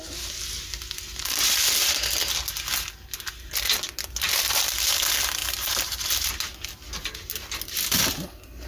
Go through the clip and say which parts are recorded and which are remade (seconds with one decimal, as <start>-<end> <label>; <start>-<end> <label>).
0.0-5.4 recorded; 5.4-6.3 remade; 6.3-8.7 recorded